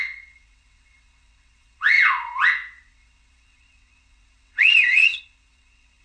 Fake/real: fake